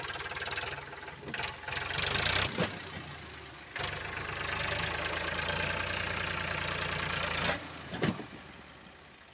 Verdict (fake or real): real